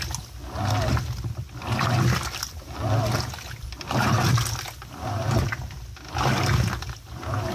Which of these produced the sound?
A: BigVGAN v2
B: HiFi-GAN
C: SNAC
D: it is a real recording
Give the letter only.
D